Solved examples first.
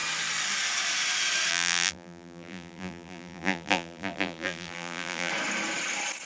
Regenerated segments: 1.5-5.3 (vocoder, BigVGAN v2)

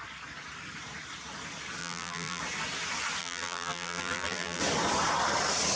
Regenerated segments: 1.8-2.4 (vocoder, BigVGAN v2); 3.2-4.6

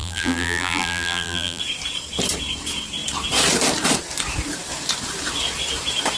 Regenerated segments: 0.0-1.6 (vocoder, BigVGAN v2)

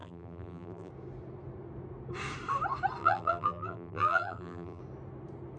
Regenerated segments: 0.0-0.9 (vocoder, BigVGAN v2); 3.0-4.8

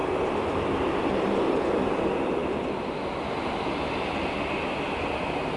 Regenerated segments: 0.0-1.6 (vocoder, BigVGAN v2)